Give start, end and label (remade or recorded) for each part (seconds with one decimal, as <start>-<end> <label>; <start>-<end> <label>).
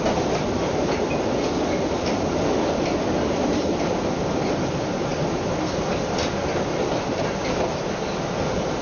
0.0-8.8 recorded